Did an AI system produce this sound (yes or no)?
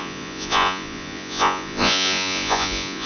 yes